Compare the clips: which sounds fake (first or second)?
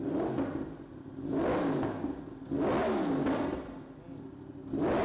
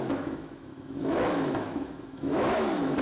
second